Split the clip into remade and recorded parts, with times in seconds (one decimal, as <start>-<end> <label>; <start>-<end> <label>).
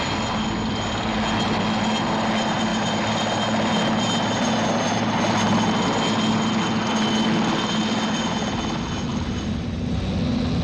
0.0-10.6 recorded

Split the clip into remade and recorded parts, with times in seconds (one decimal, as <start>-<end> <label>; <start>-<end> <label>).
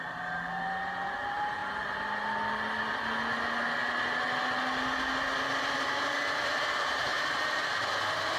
0.0-1.6 remade; 1.6-5.6 recorded; 5.6-7.1 remade; 7.1-8.4 recorded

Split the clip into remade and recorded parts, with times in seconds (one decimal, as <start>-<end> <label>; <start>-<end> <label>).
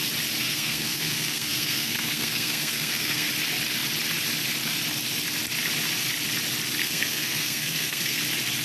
0.0-0.4 recorded; 0.4-3.3 remade; 3.3-6.8 recorded; 6.8-8.2 remade; 8.2-8.6 recorded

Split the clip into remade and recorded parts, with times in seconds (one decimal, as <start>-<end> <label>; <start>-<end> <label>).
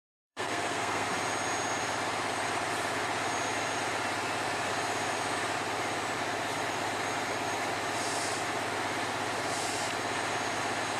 0.0-1.1 remade; 1.1-11.0 recorded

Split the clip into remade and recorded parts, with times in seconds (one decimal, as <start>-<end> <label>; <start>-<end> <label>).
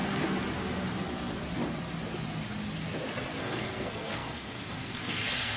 0.0-3.4 recorded; 3.4-5.6 remade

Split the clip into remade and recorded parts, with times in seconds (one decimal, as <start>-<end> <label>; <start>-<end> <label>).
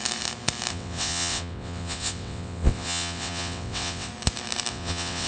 0.0-0.7 recorded; 0.7-4.1 remade; 4.1-4.7 recorded; 4.7-5.3 remade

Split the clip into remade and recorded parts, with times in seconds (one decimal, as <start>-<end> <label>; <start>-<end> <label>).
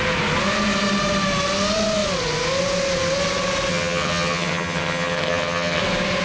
0.0-3.7 recorded; 3.7-5.8 remade; 5.8-6.2 recorded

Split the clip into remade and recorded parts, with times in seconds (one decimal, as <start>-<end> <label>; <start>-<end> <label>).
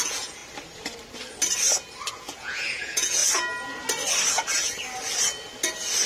0.0-0.4 remade; 0.4-2.1 recorded; 2.1-3.2 remade; 3.2-6.1 recorded